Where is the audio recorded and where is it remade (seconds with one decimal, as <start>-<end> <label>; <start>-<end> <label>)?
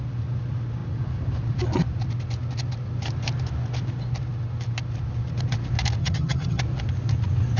0.0-6.0 recorded; 6.0-6.6 remade; 6.6-7.6 recorded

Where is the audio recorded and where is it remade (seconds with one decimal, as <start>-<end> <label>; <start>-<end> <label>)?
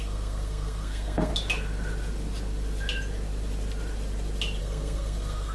0.0-1.3 remade; 1.3-4.6 recorded; 4.6-5.5 remade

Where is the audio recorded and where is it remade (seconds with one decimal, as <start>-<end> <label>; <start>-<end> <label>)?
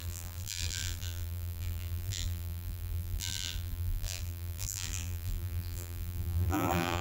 0.0-7.0 remade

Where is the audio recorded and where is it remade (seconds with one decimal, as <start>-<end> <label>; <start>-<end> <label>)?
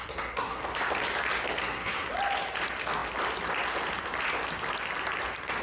0.0-0.6 remade; 0.6-1.6 recorded; 1.6-2.1 remade; 2.1-5.6 recorded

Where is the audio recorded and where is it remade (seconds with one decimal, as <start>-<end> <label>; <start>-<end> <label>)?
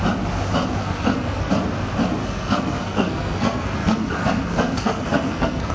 0.0-0.8 recorded; 0.8-1.5 remade; 1.5-2.2 recorded; 2.2-5.7 remade